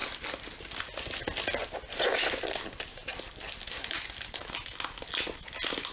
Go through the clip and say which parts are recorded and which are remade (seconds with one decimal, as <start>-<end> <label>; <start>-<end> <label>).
0.0-5.9 recorded